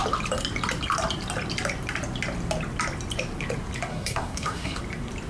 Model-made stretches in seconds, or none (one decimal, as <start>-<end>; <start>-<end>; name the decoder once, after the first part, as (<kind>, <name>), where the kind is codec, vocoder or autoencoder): 3.9-4.8 (codec, SNAC)

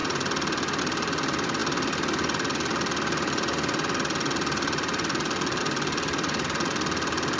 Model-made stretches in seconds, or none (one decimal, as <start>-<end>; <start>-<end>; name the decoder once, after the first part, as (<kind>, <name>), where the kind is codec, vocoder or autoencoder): none

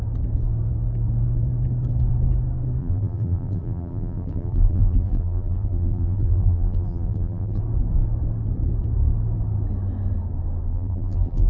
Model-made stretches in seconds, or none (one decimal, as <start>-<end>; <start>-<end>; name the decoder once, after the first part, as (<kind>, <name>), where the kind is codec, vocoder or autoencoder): 2.8-7.6 (vocoder, BigVGAN v2); 10.7-11.5

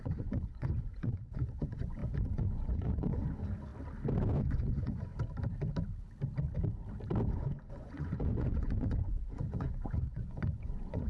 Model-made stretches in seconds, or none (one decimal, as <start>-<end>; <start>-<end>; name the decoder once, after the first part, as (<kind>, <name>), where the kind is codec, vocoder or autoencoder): 0.0-3.7 (vocoder, Vocos); 4.4-5.1; 7.3-11.1

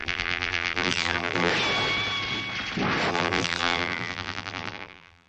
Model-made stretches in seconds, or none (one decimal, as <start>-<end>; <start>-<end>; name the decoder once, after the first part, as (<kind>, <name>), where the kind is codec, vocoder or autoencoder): 0.0-1.5 (vocoder, BigVGAN v2); 3.1-5.3

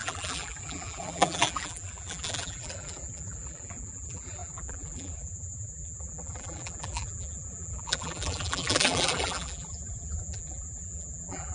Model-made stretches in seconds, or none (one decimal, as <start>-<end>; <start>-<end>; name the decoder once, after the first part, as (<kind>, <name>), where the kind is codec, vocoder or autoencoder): 0.0-11.5 (vocoder, BigVGAN v2)

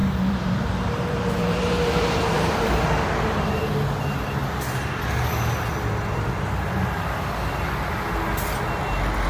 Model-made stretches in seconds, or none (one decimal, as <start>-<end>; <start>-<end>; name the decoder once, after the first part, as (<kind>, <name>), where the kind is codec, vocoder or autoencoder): 0.0-3.6 (vocoder, BigVGAN v2)

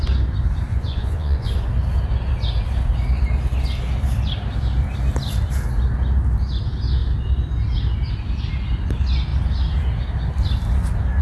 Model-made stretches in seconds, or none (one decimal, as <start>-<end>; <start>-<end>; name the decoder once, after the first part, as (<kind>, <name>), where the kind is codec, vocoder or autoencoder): 0.7-1.5 (vocoder, Vocos)